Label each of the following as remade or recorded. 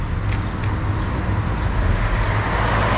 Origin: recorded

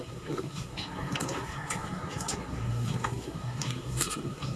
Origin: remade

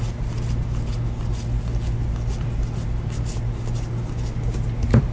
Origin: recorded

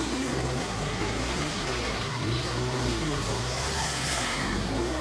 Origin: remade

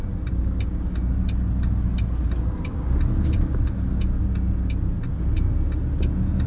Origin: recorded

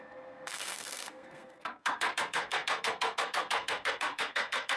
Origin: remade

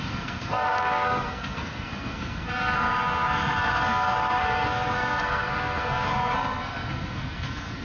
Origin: remade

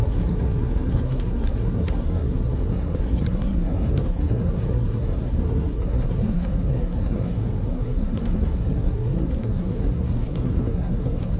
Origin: remade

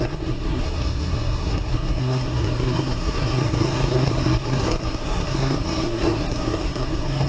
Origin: remade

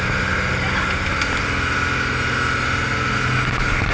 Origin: recorded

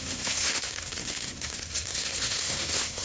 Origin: remade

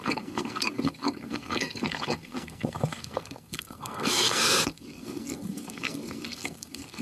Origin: remade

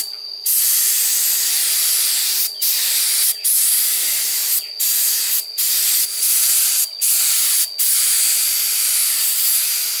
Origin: recorded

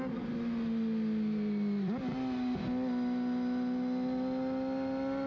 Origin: recorded